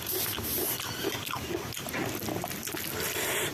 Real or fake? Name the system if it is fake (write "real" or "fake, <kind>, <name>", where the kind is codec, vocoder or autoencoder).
real